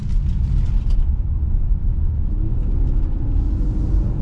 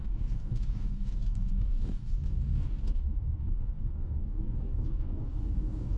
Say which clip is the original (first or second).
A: first